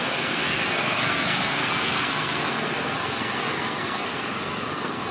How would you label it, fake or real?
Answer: fake